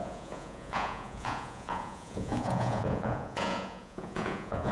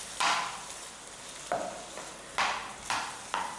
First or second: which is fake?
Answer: first